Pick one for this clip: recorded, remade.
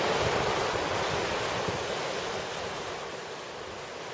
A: recorded